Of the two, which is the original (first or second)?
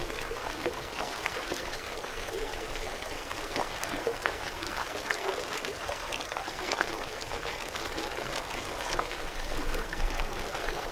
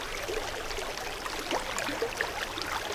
second